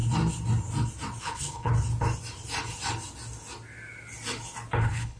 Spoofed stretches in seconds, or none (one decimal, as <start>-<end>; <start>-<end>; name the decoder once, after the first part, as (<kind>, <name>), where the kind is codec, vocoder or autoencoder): 1.2-1.7 (codec, HILCodec); 4.8-5.2